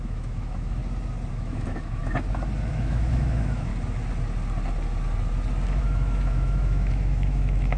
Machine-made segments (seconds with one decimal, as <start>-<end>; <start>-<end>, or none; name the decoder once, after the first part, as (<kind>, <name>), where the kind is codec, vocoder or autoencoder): 0.0-0.8 (autoencoder, DAC-VAE); 1.3-2.0; 2.7-3.7; 5.8-7.8